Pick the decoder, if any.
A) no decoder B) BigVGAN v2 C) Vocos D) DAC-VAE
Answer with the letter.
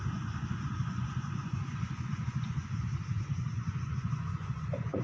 C